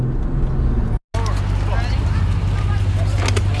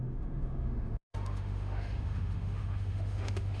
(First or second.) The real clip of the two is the first